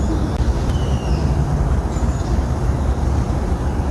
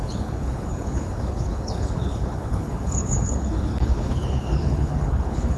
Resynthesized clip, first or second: second